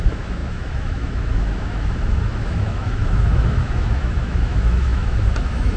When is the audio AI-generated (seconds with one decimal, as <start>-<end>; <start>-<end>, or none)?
0.0-5.8